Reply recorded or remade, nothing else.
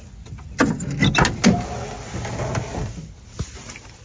recorded